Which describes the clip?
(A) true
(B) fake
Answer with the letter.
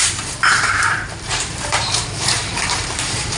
B